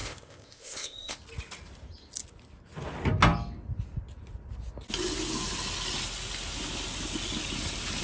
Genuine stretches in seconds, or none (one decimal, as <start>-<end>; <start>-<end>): 1.2-8.0